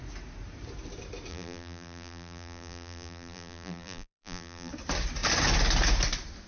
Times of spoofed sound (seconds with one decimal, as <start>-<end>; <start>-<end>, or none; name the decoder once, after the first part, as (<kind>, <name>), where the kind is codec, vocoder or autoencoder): 1.3-4.7 (vocoder, BigVGAN v2)